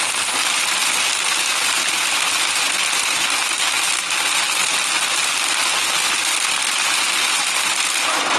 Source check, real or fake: real